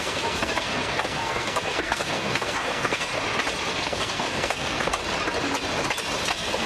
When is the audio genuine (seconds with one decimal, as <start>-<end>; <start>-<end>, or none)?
3.1-3.7; 5.0-6.3